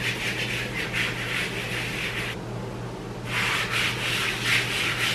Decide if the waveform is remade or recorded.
recorded